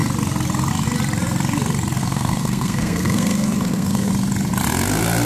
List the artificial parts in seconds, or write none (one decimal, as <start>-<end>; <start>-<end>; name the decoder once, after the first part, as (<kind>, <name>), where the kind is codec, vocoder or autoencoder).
2.0-4.1 (codec, SNAC)